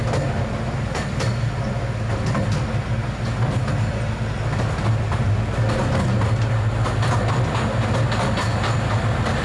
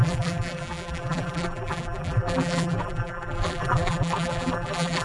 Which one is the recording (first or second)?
first